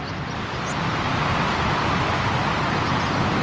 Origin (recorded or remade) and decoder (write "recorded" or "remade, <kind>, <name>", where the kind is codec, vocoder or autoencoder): recorded